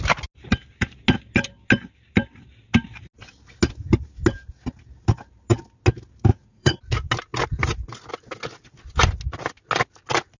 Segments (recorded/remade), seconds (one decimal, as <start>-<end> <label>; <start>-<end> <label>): 0.0-6.3 recorded; 6.3-6.8 remade; 6.8-10.4 recorded